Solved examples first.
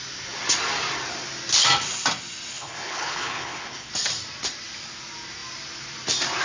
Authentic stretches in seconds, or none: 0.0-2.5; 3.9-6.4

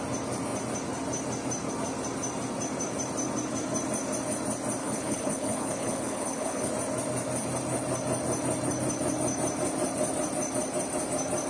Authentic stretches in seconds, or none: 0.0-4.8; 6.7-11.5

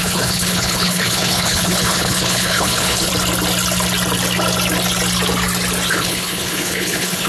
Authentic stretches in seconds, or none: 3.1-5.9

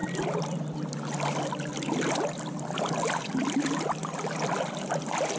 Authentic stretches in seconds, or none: 0.0-5.4